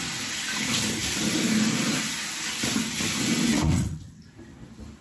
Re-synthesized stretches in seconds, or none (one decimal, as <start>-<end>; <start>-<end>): 3.5-4.2